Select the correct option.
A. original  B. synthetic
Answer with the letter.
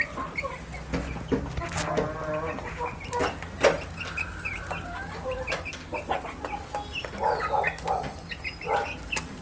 A